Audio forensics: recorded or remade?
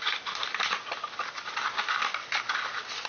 recorded